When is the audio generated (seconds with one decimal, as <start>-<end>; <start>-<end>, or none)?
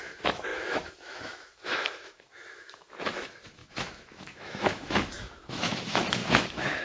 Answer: 0.0-6.8